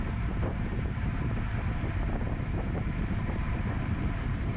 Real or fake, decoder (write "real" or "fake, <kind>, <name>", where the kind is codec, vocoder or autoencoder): fake, vocoder, BigVGAN v2